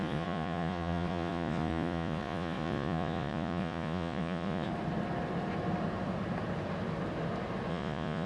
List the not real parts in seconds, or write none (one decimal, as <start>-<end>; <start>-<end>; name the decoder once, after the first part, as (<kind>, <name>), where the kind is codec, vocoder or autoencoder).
0.0-4.7 (vocoder, Vocos); 7.7-8.3